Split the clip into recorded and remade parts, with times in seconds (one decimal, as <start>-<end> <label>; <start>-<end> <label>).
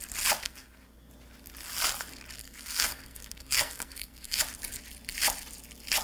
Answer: 0.0-0.4 recorded; 0.4-1.1 remade; 1.1-2.4 recorded; 2.4-4.4 remade; 4.4-6.0 recorded